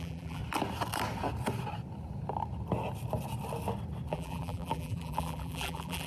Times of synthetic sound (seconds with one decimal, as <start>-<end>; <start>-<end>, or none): 0.0-0.4; 4.1-6.1

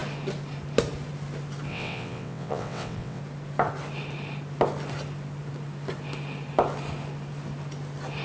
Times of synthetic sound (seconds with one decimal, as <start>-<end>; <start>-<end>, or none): 1.7-3.2